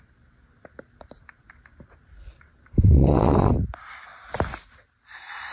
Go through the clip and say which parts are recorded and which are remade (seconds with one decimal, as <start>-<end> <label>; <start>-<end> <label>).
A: 0.0-2.8 recorded; 2.8-3.5 remade; 3.5-5.5 recorded